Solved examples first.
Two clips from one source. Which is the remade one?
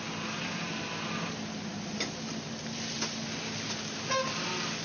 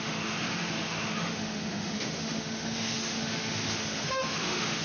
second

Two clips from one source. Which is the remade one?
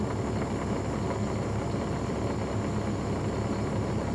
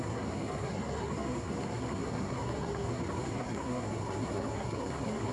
second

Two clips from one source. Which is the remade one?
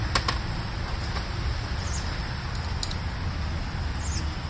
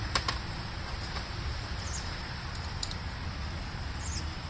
second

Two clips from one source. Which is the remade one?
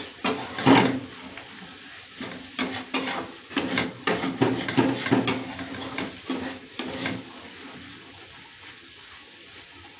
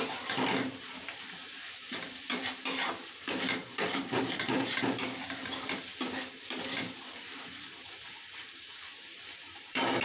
second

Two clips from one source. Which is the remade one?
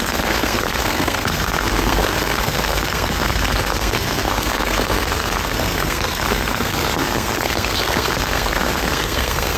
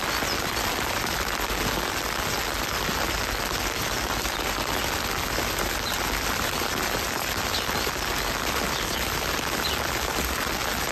first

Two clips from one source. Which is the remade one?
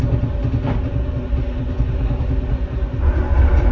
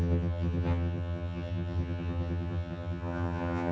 second